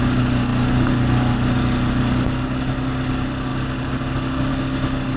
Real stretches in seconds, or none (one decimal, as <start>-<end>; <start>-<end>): 0.0-5.2